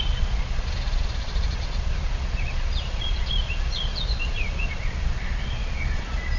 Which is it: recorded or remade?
remade